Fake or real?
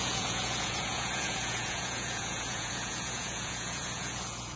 fake